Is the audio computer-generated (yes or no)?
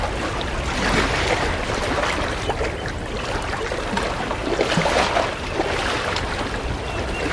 no